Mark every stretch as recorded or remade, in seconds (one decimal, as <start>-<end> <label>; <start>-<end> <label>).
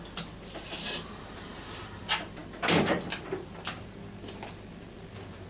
0.0-5.5 recorded